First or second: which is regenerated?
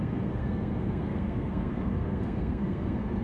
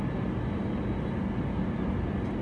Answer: first